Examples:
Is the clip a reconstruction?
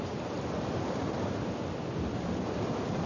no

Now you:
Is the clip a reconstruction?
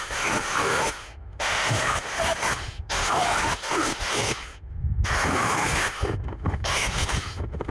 yes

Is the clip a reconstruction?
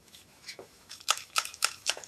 yes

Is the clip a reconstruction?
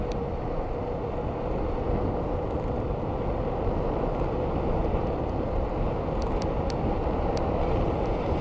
no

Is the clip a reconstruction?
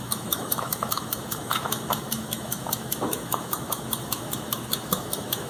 yes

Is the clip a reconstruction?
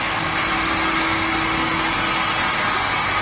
no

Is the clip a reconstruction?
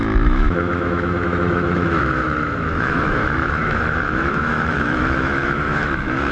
yes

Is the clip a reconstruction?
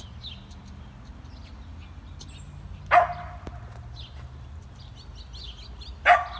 no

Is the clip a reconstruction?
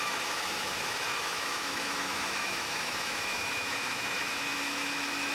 yes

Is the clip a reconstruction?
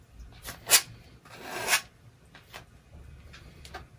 no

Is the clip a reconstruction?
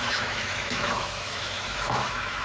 yes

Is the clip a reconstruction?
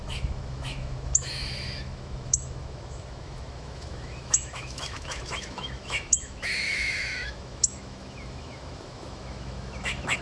yes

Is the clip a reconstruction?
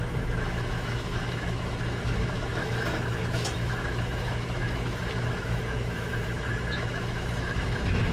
yes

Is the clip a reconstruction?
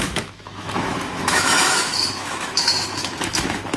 yes